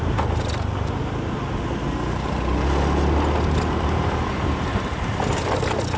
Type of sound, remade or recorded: recorded